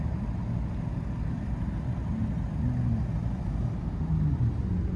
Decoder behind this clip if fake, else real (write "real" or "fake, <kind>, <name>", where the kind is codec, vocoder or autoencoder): real